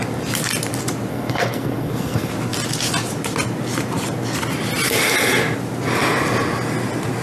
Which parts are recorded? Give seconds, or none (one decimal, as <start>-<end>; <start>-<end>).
0.0-1.1; 2.3-7.2